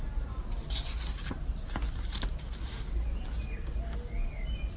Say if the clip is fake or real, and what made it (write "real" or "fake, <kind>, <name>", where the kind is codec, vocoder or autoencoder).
real